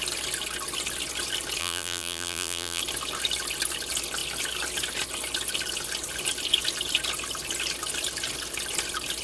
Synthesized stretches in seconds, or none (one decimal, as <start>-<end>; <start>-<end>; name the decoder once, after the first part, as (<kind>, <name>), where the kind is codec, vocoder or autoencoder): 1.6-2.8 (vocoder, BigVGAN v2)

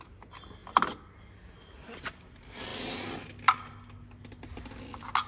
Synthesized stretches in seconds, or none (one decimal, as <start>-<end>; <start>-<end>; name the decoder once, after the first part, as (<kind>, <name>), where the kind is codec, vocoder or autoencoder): 0.6-1.5 (vocoder, BigVGAN v2)

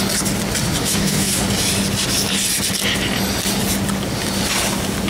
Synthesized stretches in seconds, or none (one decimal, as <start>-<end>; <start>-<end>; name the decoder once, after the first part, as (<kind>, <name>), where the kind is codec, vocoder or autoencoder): 0.8-1.4 (codec, DAC)

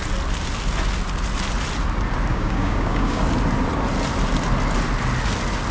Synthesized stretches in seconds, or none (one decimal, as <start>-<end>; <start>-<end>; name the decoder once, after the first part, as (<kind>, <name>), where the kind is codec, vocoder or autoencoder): 2.3-3.2 (codec, DAC)